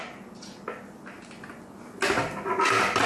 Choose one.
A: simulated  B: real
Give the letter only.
B